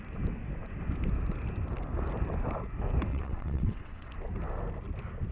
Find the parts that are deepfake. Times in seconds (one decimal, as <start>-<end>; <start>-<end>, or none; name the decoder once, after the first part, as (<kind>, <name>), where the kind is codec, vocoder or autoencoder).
3.1-4.1 (vocoder, WaveNeXt)